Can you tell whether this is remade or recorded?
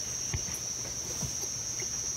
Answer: recorded